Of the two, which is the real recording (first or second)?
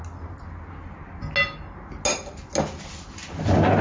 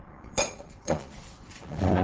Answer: first